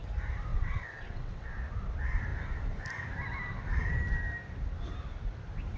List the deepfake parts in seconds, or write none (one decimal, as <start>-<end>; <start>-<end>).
0.5-1.5